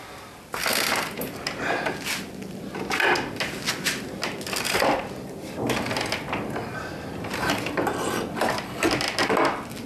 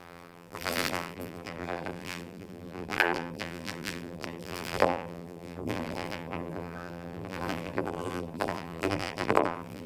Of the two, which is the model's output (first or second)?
second